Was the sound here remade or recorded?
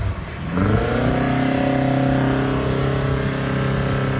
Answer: recorded